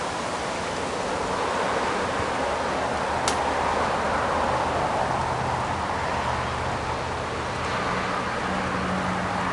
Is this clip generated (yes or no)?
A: no